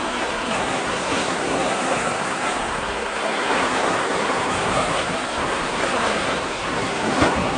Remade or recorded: remade